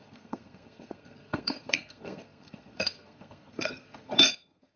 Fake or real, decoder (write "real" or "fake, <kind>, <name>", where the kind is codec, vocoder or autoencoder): fake, codec, SNAC